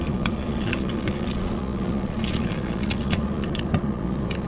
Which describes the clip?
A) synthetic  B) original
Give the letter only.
A